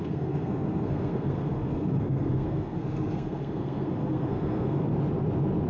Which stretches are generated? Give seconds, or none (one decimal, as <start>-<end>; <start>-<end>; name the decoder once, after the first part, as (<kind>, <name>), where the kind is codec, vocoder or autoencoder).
0.0-4.9 (codec, SNAC)